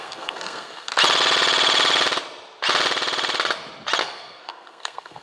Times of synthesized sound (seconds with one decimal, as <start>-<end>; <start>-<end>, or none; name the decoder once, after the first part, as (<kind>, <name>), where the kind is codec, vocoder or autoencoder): 0.0-0.9 (codec, SNAC); 4.0-5.2